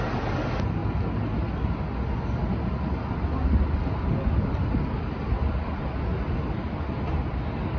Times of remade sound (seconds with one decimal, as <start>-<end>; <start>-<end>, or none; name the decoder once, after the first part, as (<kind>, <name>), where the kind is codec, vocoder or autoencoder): none